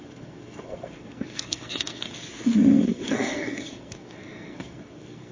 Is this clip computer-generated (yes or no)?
yes